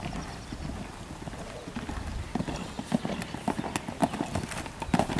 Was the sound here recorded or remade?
recorded